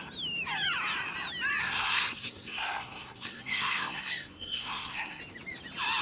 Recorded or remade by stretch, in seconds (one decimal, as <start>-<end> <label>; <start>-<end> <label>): 0.0-1.6 recorded; 1.6-5.2 remade; 5.2-6.0 recorded